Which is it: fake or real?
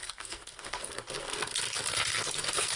fake